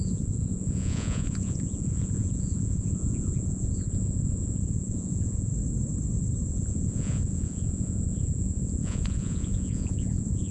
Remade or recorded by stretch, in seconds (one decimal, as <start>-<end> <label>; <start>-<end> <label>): 0.0-5.5 remade; 5.5-6.5 recorded; 6.5-10.5 remade